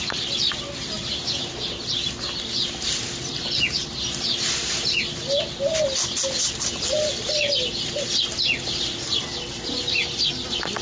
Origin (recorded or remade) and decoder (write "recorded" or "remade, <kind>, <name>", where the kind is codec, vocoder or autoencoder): recorded